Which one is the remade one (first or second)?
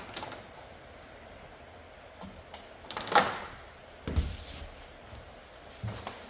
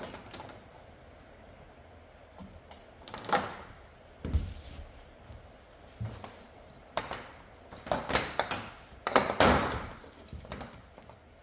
second